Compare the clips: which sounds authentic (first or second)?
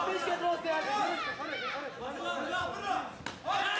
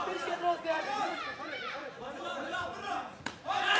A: first